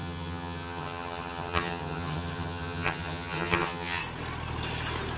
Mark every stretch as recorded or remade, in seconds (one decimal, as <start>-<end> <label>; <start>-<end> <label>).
0.0-4.0 remade; 4.0-5.2 recorded